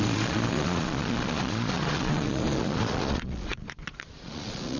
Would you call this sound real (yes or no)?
no